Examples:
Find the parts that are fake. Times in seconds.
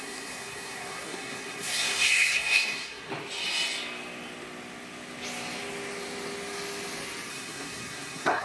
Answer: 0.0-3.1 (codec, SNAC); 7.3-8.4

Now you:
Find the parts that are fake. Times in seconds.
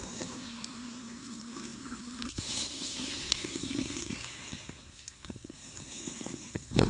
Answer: 0.0-6.9 (codec, SNAC)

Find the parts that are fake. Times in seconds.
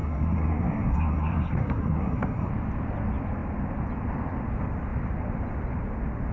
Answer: 0.0-2.5 (codec, SNAC)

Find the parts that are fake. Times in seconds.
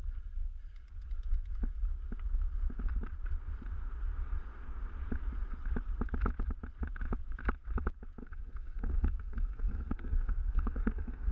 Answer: 8.2-11.3 (codec, SNAC)